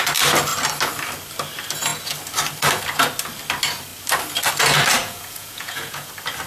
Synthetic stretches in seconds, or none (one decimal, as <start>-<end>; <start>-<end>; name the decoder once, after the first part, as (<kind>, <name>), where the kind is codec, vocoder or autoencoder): 5.0-6.1 (vocoder, Vocos)